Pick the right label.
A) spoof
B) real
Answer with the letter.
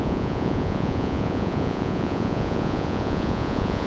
A